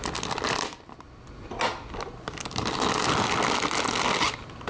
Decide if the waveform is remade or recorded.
recorded